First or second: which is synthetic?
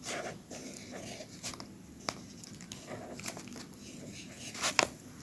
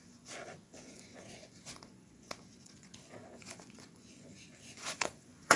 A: second